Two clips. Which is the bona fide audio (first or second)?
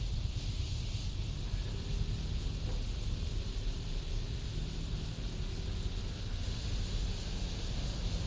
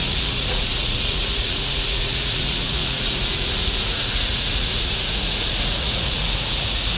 first